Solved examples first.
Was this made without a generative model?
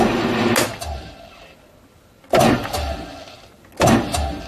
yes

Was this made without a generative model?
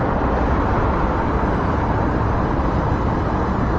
yes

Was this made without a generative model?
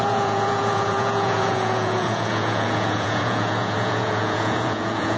no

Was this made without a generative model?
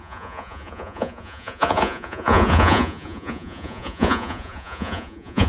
no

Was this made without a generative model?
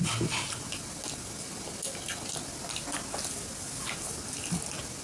yes